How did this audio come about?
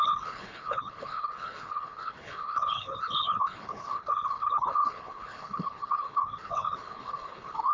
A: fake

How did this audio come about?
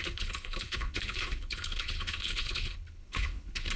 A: fake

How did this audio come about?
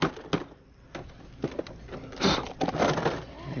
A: real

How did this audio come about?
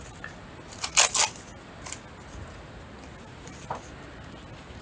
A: real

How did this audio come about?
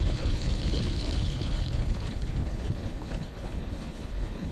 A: fake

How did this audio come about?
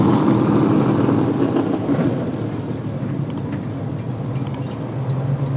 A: real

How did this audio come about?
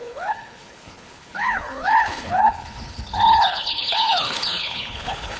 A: fake